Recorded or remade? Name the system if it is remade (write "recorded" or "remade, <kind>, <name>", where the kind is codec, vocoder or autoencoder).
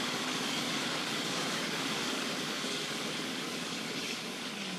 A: remade, codec, DAC